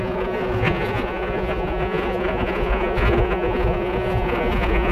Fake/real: fake